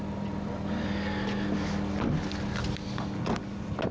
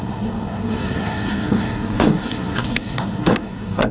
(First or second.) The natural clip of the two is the first